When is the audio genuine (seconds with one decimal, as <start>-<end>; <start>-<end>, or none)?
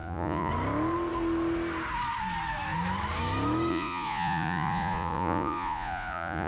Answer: 0.5-3.7